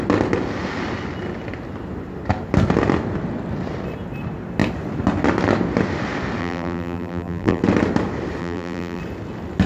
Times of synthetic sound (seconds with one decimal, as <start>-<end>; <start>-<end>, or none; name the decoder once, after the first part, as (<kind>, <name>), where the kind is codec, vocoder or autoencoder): 6.4-7.6 (vocoder, BigVGAN v2); 8.4-9.0